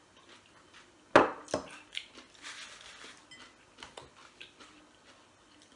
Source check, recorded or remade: recorded